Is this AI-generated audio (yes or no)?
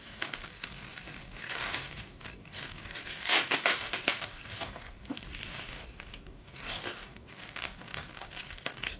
yes